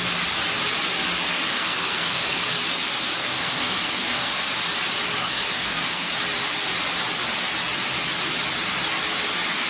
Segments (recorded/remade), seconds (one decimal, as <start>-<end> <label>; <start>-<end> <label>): 0.0-1.4 recorded; 1.4-2.6 remade; 2.6-3.2 recorded; 3.2-4.3 remade; 4.3-5.2 recorded; 5.2-6.1 remade; 6.1-9.7 recorded